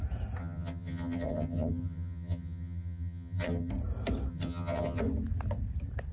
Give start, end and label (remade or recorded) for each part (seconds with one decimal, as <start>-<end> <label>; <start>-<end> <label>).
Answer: 0.0-0.4 recorded; 0.4-3.7 remade; 3.7-4.3 recorded; 4.3-5.0 remade; 5.0-6.1 recorded